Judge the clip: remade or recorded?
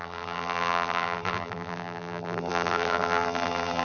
remade